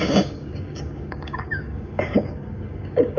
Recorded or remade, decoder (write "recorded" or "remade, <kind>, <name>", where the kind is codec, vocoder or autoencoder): remade, codec, DAC